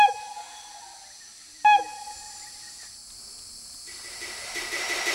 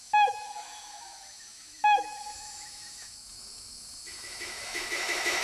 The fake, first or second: second